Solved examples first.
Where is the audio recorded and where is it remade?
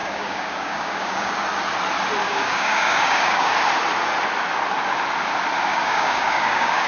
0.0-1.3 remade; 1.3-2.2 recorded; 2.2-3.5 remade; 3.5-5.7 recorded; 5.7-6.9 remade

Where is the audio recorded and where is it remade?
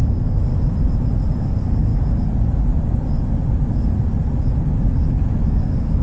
0.0-0.5 remade; 0.5-1.3 recorded; 1.3-1.9 remade; 1.9-5.5 recorded; 5.5-6.0 remade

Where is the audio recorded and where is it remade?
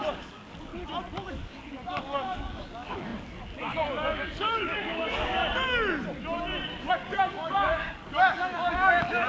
0.0-0.7 remade; 0.7-1.3 recorded; 1.3-5.4 remade; 5.4-6.9 recorded; 6.9-9.3 remade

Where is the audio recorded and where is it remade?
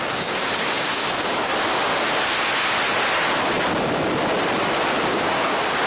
0.0-1.5 remade; 1.5-5.0 recorded; 5.0-5.9 remade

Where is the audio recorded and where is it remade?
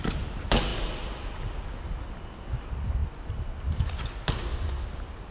0.0-5.3 recorded